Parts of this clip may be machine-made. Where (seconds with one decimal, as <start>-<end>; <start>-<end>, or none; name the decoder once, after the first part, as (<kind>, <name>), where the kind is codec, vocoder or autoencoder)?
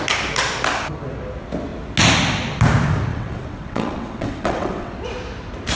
3.1-4.9 (vocoder, WaveNeXt)